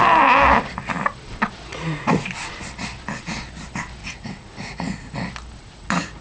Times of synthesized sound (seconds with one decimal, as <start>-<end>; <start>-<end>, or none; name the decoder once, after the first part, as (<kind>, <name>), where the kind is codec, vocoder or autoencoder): 1.7-2.3 (vocoder, Vocos); 4.0-5.1; 5.6-6.2